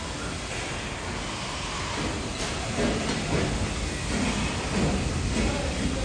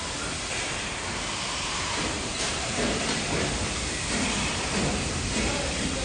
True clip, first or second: first